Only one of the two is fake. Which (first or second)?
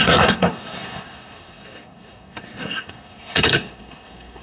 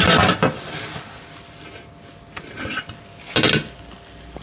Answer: first